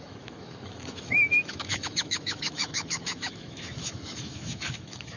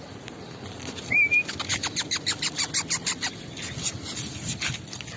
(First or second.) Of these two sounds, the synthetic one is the first